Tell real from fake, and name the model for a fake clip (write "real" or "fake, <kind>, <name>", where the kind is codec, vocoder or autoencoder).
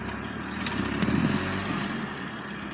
real